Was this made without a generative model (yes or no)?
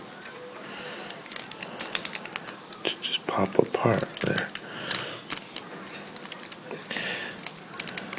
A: yes